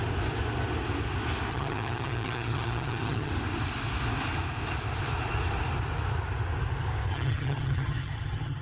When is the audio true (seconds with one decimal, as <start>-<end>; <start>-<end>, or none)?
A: 0.0-1.5; 3.3-7.1